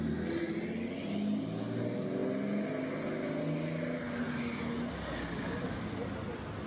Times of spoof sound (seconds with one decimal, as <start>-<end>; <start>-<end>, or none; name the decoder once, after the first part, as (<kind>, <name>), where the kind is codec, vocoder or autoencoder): none